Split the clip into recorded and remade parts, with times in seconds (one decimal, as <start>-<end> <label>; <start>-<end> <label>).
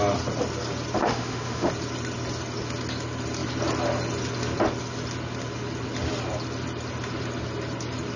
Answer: 0.0-1.0 recorded; 1.0-1.7 remade; 1.7-8.2 recorded